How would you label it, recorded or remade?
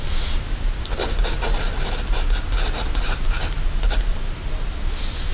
recorded